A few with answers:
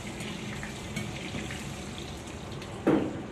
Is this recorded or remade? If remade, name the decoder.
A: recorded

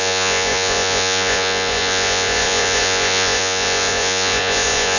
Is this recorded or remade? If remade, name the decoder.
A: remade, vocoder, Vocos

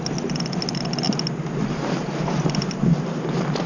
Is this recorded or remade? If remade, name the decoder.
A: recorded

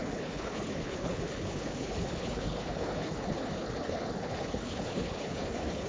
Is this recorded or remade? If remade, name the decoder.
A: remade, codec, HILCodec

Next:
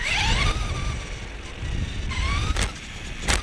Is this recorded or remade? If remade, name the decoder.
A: recorded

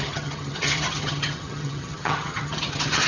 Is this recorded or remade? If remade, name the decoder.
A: remade, vocoder, HiFi-GAN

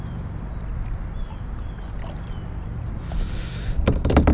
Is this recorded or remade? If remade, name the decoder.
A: recorded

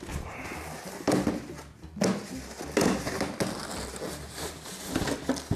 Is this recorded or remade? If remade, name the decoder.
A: recorded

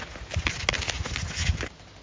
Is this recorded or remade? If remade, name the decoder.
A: recorded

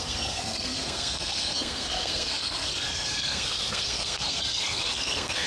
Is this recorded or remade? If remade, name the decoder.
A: remade, codec, SNAC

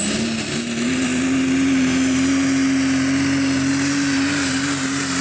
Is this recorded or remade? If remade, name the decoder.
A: recorded